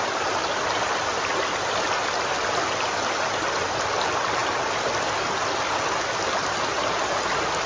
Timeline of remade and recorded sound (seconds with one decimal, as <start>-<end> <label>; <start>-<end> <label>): 0.0-7.7 recorded